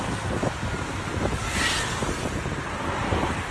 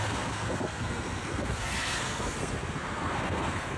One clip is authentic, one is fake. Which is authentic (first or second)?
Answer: first